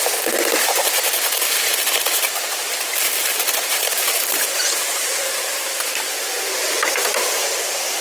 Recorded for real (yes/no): no